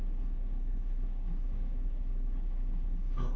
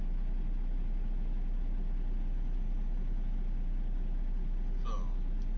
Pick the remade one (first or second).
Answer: first